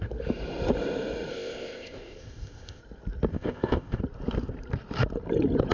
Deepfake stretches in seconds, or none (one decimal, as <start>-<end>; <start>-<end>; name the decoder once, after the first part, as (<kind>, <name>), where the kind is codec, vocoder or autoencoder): 1.3-2.8 (codec, ZipCodec); 3.3-4.0